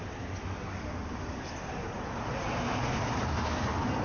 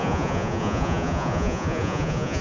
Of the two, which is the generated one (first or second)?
second